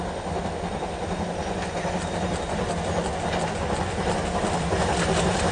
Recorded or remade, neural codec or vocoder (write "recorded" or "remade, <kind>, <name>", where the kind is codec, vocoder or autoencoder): recorded